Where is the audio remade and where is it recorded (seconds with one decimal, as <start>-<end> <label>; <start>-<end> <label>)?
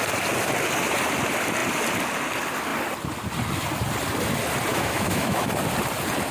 0.0-4.7 recorded; 4.7-5.5 remade; 5.5-6.3 recorded